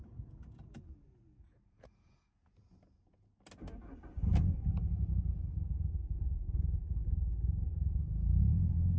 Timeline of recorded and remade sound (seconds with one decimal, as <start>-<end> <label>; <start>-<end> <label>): 0.0-3.3 remade; 3.3-8.4 recorded; 8.4-9.0 remade